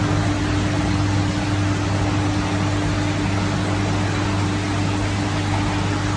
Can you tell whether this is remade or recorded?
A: recorded